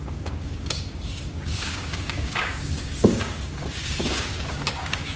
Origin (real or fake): fake